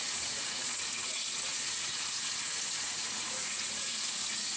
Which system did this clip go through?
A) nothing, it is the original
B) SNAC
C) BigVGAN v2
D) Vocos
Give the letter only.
D